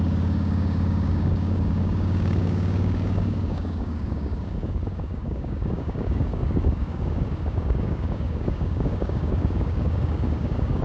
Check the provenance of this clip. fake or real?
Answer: fake